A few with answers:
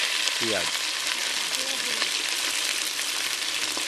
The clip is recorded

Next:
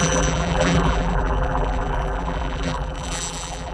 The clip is remade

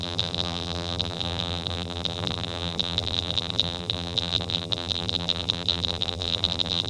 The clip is remade